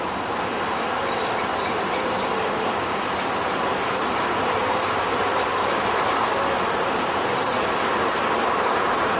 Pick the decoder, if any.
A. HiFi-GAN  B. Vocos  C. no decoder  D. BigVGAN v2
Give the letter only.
C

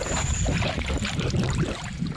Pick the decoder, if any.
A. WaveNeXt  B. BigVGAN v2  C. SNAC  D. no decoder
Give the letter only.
B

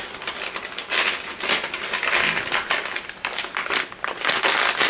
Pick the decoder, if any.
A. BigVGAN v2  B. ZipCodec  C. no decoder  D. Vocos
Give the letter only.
C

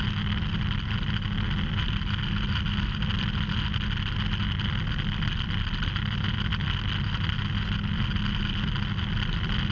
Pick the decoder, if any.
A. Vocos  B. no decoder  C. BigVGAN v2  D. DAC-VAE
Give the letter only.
B